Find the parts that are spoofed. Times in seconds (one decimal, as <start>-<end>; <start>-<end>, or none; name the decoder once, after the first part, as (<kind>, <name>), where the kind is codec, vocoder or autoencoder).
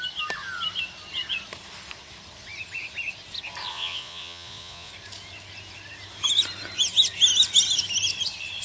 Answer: 3.7-4.9 (vocoder, Vocos)